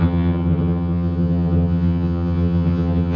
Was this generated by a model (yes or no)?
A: yes